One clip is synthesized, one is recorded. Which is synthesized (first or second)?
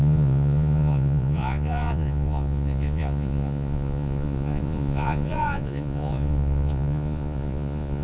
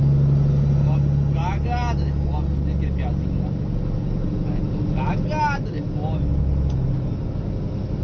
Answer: first